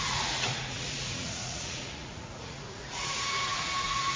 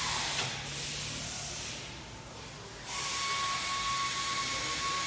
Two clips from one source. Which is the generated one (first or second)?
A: first